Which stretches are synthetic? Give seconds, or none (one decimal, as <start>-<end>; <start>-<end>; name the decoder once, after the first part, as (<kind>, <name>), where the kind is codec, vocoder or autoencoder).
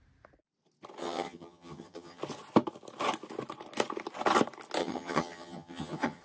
1.0-2.2 (vocoder, HiFi-GAN); 4.8-6.2